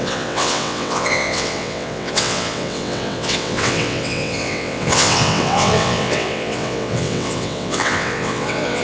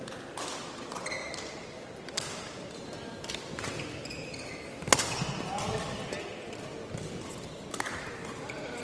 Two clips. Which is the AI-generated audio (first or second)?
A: first